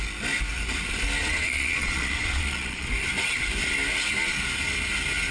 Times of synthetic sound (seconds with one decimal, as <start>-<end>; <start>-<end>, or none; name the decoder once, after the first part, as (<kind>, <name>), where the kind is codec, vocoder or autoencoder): 1.2-2.9 (vocoder, Vocos)